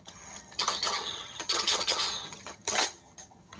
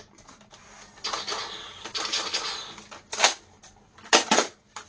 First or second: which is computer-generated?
first